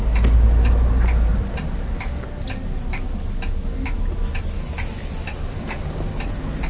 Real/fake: real